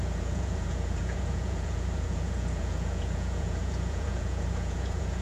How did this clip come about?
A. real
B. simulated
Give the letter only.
B